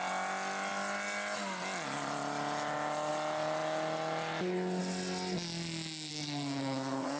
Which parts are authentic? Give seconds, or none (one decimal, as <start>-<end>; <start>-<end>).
0.0-6.1